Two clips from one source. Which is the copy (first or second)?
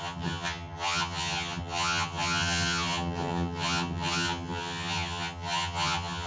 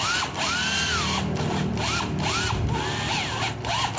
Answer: first